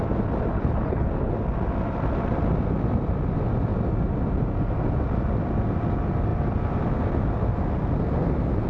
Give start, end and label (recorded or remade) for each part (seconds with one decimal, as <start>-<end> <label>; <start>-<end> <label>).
0.0-0.5 recorded; 0.5-1.3 remade; 1.3-8.7 recorded